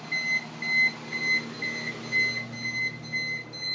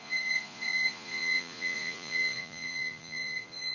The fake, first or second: second